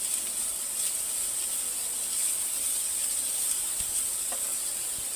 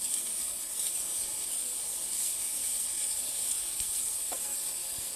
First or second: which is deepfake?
second